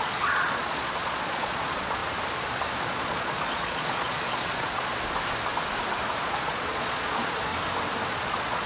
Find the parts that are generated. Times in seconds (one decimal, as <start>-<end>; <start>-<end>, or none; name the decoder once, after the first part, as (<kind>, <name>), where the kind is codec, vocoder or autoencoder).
0.0-2.0 (vocoder, Vocos); 2.9-4.9; 6.1-7.5; 8.1-8.7

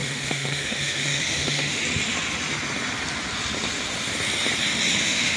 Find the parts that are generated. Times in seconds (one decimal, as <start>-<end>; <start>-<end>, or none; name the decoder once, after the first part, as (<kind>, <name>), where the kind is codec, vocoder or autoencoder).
0.0-1.8 (autoencoder, DAC-VAE); 5.0-5.4

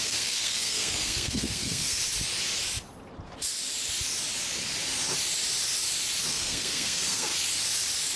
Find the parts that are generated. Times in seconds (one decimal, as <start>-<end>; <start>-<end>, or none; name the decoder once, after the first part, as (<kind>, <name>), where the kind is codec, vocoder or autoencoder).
0.0-2.0 (codec, SNAC); 6.3-7.3

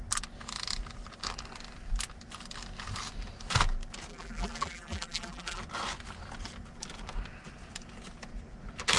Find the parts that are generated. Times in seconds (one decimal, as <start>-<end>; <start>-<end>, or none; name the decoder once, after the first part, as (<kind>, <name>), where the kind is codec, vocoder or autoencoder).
4.1-5.6 (vocoder, BigVGAN v2)

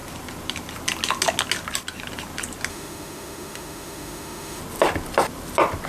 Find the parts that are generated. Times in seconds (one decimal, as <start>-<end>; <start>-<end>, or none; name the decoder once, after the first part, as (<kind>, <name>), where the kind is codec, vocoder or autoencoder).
2.7-4.6 (autoencoder, DAC-VAE)